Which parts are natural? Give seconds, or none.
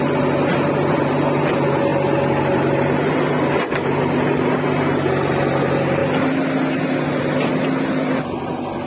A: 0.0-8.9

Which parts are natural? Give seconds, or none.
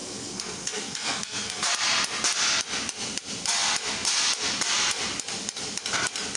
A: 1.7-6.4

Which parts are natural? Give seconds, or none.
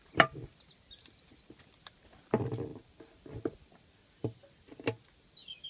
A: 0.0-5.7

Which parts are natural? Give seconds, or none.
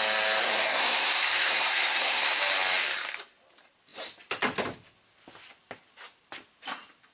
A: 0.0-0.4; 2.4-7.1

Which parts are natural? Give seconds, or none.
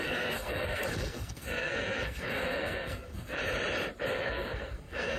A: 3.4-4.1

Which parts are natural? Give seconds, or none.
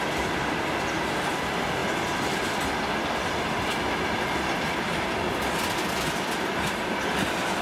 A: 0.0-7.6